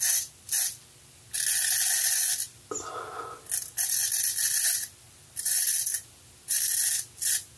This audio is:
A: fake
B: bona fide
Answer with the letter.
B